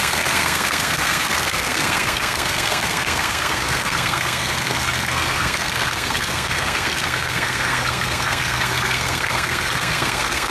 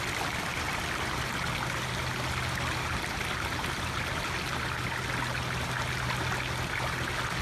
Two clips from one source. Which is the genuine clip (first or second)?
second